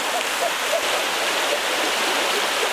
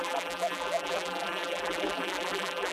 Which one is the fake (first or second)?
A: second